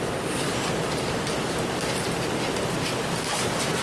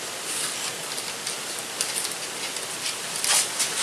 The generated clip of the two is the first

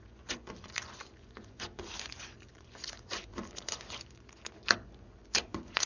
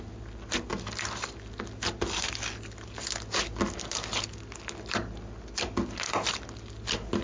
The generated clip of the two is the first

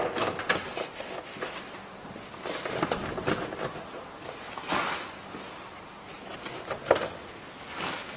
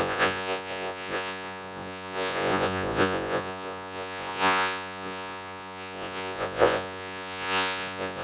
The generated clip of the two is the second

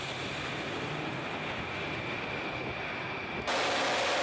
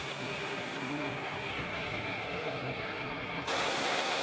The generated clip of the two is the second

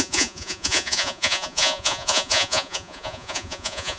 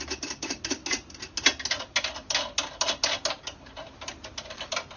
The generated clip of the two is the first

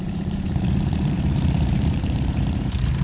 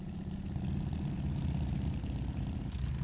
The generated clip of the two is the first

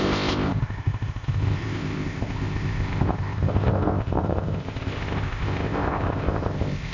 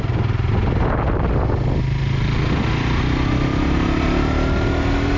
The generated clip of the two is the first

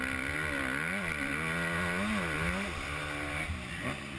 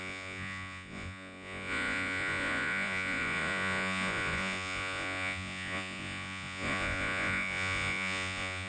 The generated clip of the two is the second